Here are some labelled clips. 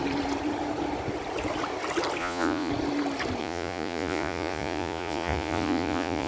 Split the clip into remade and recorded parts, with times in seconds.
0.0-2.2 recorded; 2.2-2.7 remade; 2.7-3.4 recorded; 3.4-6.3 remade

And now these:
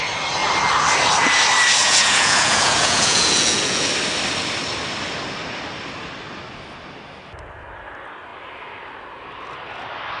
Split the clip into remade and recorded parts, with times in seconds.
0.0-1.8 recorded; 1.8-3.9 remade; 3.9-10.2 recorded